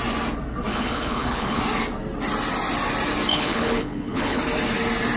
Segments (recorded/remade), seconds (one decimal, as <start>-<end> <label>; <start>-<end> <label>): 0.0-0.7 recorded; 0.7-1.6 remade; 1.6-3.3 recorded; 3.3-4.4 remade; 4.4-5.2 recorded